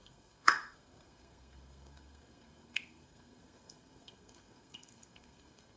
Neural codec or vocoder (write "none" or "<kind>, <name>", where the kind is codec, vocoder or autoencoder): codec, SNAC